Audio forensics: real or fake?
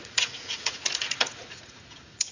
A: fake